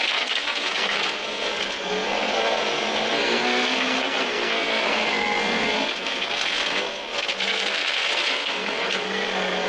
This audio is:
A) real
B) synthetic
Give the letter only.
B